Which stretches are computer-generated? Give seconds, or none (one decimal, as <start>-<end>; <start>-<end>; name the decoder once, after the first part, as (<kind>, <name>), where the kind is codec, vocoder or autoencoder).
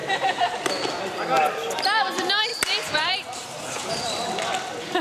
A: 0.0-0.7 (vocoder, BigVGAN v2); 2.5-3.9